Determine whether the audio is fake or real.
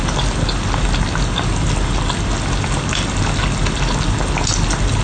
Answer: real